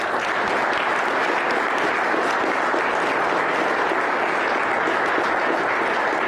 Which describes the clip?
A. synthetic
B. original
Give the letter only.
B